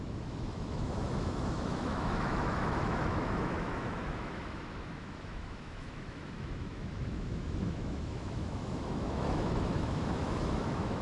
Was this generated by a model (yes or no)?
yes